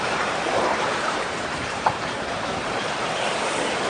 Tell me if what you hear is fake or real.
fake